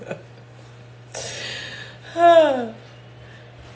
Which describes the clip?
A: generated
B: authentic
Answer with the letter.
B